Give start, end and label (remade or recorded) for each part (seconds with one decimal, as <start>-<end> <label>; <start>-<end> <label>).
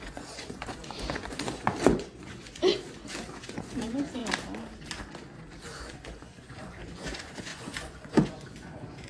0.0-2.7 remade; 2.7-3.4 recorded; 3.4-4.2 remade; 4.2-5.6 recorded; 5.6-9.1 remade